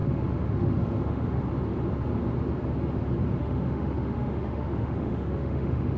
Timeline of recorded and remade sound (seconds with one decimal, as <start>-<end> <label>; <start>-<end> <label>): 0.0-1.4 remade; 1.4-3.4 recorded; 3.4-6.0 remade

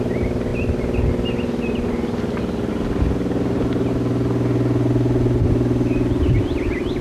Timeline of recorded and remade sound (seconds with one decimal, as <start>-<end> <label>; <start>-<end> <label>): 0.0-7.0 recorded

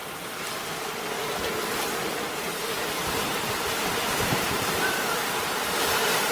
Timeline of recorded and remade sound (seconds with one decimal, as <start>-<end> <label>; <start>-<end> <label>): 0.0-3.4 recorded; 3.4-6.3 remade

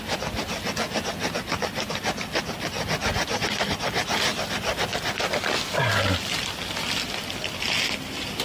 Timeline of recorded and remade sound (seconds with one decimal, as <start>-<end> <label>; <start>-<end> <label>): 0.0-8.4 recorded

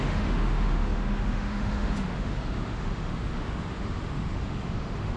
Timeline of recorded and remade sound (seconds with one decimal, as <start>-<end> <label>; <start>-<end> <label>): 0.0-5.2 remade

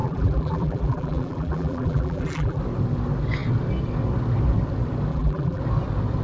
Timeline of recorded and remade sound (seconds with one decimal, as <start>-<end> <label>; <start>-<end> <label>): 0.0-2.6 remade; 2.6-5.1 recorded; 5.1-5.6 remade; 5.6-6.2 recorded

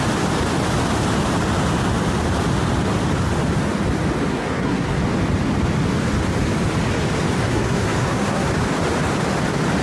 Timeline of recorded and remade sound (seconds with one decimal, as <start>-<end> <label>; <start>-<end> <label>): 0.0-4.3 recorded; 4.3-5.0 remade; 5.0-7.4 recorded; 7.4-8.5 remade; 8.5-9.8 recorded

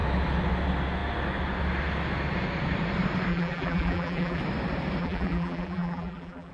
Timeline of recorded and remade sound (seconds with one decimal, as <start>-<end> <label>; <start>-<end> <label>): 0.0-3.3 recorded; 3.3-4.4 remade; 4.4-5.0 recorded; 5.0-6.5 remade